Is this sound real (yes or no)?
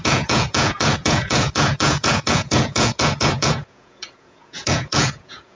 no